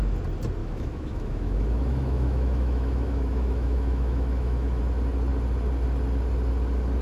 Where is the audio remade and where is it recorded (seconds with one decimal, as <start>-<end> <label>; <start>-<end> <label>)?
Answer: 0.0-0.6 recorded; 0.6-4.8 remade; 4.8-7.0 recorded